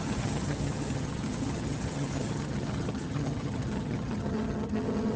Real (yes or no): no